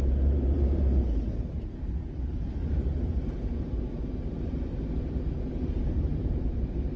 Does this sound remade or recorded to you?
remade